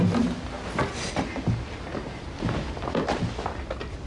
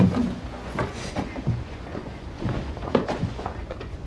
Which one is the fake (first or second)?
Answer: second